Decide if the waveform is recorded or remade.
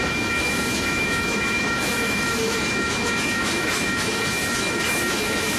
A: remade